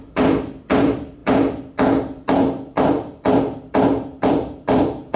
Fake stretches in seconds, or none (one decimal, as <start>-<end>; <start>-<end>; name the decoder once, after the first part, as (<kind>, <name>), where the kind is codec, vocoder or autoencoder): 1.2-4.3 (vocoder, BigVGAN v2)